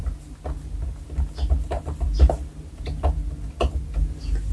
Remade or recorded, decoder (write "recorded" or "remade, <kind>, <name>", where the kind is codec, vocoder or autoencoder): recorded